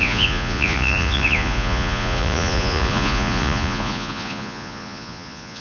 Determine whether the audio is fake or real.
fake